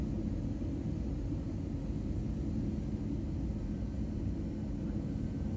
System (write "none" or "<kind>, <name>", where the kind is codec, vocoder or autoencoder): none